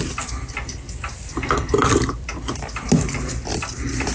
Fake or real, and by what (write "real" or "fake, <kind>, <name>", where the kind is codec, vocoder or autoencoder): real